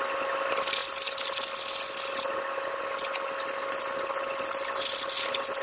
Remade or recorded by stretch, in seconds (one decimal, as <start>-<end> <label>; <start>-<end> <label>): 0.0-5.6 recorded